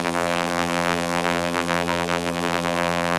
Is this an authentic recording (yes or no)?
no